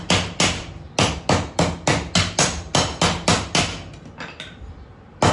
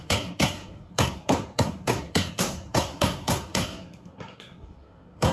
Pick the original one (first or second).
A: first